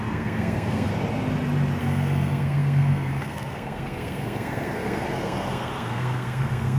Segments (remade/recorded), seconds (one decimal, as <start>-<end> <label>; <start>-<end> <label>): 0.0-0.9 remade; 0.9-1.8 recorded; 1.8-6.8 remade